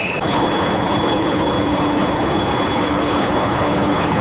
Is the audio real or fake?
fake